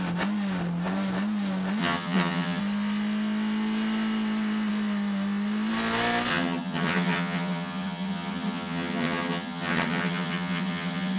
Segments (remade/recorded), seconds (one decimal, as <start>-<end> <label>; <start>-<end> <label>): 0.0-1.8 recorded; 1.8-2.6 remade; 2.6-6.3 recorded; 6.3-11.2 remade